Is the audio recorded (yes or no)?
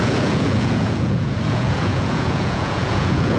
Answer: no